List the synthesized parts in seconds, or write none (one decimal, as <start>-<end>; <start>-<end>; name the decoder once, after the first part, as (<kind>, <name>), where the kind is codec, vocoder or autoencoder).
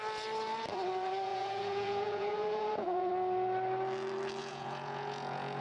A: 1.3-3.1 (vocoder, Vocos); 4.4-5.6